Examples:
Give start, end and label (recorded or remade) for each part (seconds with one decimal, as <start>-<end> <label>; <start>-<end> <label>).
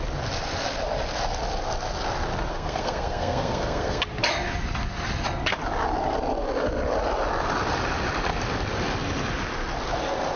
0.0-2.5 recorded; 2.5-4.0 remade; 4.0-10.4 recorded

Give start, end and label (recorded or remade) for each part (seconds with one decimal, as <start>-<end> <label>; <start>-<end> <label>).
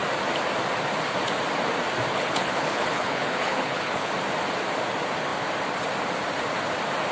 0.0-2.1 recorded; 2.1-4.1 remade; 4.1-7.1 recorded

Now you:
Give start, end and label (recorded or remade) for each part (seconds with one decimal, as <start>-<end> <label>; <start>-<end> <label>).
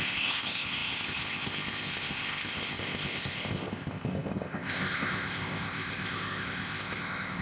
0.0-7.4 remade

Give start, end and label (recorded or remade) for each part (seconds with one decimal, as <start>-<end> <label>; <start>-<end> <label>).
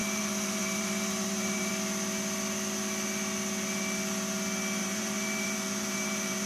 0.0-1.7 remade; 1.7-4.8 recorded; 4.8-6.5 remade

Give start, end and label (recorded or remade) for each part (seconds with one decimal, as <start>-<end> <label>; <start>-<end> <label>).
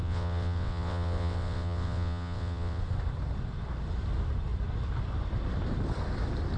0.0-2.8 remade; 2.8-6.6 recorded